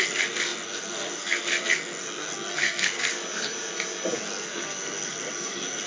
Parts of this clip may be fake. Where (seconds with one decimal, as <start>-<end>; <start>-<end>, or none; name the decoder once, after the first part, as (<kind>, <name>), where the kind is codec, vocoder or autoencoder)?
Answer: 0.0-3.1 (codec, SNAC); 4.2-5.9

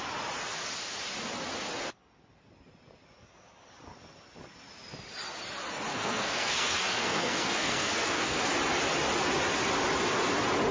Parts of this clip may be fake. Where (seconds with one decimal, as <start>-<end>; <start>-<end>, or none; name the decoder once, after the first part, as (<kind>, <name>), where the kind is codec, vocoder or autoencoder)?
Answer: 5.9-8.4 (codec, SNAC)

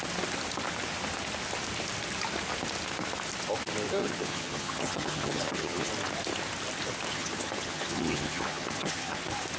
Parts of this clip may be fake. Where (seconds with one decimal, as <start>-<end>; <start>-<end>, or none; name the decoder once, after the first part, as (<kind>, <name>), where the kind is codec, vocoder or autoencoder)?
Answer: 4.0-5.9 (vocoder, HiFi-GAN); 7.1-9.2

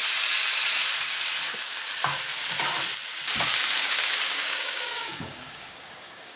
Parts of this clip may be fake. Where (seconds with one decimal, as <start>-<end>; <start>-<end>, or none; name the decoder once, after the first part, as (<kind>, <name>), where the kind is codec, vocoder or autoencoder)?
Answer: 3.8-6.4 (codec, DAC)

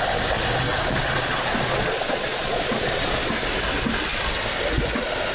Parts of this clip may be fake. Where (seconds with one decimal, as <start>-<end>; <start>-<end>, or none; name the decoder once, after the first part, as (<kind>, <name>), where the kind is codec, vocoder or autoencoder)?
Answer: 0.7-3.3 (vocoder, Vocos)